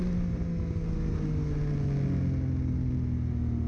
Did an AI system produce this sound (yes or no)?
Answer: no